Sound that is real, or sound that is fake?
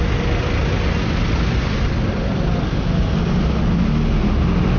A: real